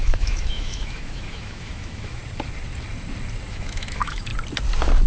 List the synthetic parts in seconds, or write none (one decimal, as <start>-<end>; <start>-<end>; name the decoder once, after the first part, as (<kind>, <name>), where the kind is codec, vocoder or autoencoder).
0.0-2.2 (autoencoder, DAC-VAE); 3.5-4.3